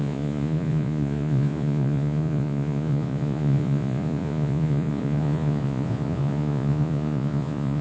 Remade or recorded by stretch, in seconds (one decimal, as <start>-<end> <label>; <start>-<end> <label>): 0.0-7.8 remade